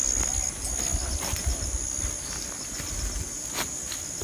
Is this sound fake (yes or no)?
no